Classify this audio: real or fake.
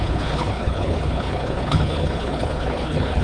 fake